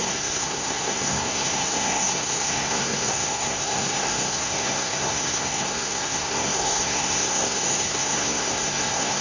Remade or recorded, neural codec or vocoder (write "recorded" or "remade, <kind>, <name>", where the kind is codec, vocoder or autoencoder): remade, codec, SNAC